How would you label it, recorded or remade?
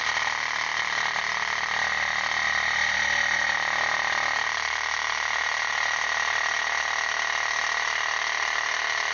recorded